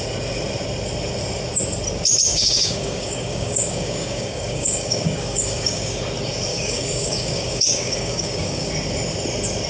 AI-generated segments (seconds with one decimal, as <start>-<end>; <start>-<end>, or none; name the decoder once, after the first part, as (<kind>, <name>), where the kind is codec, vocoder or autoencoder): 2.3-6.0 (codec, DAC); 6.5-8.7